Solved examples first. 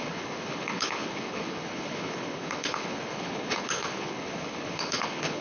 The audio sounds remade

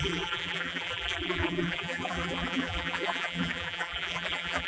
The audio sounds remade